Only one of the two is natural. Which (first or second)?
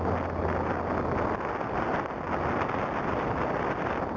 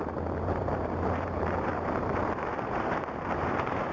first